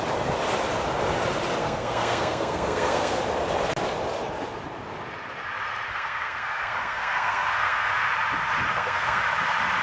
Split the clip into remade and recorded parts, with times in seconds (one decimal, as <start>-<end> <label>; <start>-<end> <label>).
0.0-1.6 recorded; 1.6-3.2 remade; 3.2-5.9 recorded; 5.9-7.9 remade; 7.9-8.7 recorded; 8.7-9.2 remade; 9.2-9.8 recorded